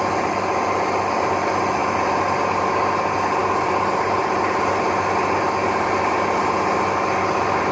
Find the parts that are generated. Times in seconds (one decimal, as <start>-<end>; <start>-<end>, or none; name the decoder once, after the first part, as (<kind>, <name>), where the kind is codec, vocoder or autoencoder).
none